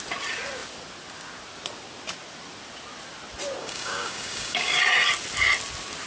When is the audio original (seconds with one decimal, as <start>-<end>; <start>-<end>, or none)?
0.0-3.6; 4.8-6.1

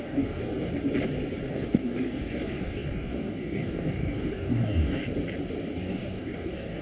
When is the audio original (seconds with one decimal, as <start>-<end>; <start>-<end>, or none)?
0.7-1.5; 5.0-5.6

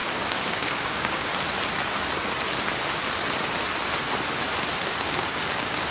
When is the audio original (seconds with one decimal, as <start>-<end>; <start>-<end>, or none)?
1.3-4.8

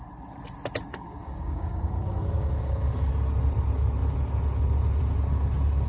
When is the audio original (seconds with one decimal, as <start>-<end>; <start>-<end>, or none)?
0.0-0.9; 3.1-5.9

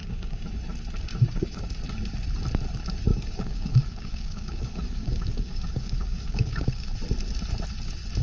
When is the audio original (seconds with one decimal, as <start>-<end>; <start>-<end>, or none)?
0.6-1.1; 1.6-3.1; 6.9-8.2